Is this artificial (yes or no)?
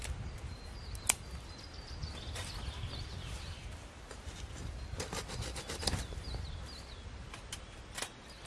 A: no